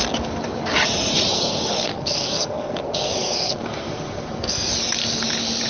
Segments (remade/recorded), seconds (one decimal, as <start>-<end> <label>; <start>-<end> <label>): 0.0-1.3 recorded; 1.3-4.7 remade; 4.7-5.7 recorded